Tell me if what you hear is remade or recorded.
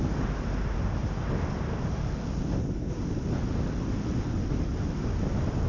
recorded